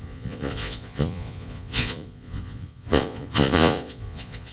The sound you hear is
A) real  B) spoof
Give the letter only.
B